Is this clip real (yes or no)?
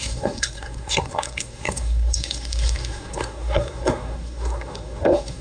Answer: no